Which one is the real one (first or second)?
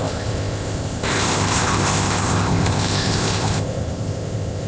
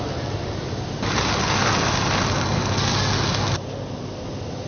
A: second